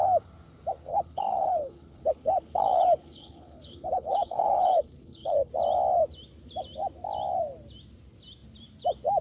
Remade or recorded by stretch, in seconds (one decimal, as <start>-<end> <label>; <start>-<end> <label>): 0.0-0.9 recorded; 0.9-5.5 remade; 5.5-9.2 recorded